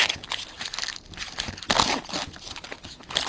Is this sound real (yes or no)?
yes